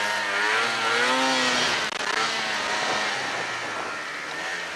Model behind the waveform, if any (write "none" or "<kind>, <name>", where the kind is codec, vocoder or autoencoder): none